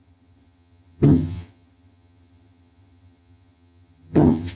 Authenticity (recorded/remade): remade